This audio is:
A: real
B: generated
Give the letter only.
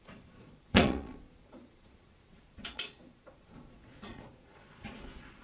B